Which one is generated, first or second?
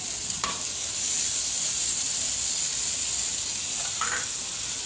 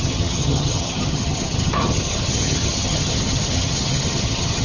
second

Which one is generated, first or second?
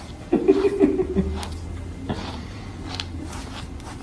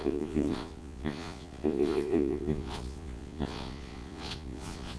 second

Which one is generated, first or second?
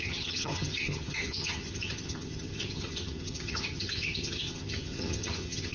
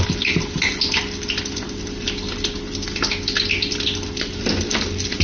first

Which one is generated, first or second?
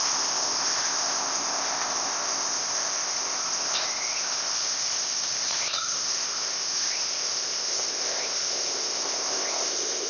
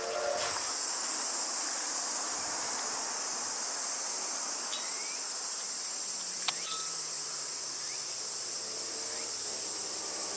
first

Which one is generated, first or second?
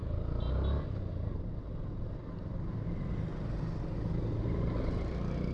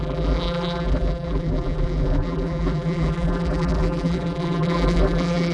second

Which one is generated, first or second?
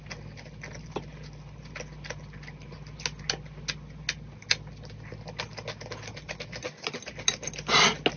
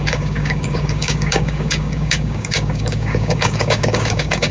second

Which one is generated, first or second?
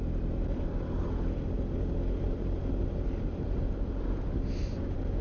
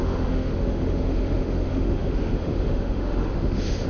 second